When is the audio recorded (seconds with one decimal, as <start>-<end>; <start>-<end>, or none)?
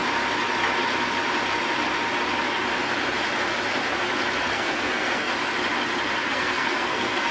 0.0-4.4; 5.3-6.2